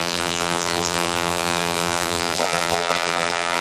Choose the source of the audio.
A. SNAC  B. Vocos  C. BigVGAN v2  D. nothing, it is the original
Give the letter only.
C